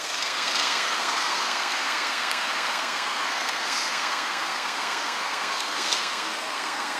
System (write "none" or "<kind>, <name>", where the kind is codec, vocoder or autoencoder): codec, SNAC